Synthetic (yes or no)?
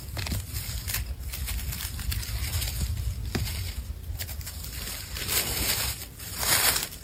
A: yes